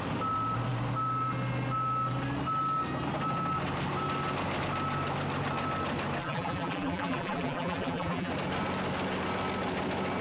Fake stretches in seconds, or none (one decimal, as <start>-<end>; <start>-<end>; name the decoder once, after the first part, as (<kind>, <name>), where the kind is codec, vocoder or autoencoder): 6.2-8.3 (vocoder, BigVGAN v2)